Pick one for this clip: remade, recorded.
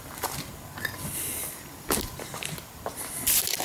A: recorded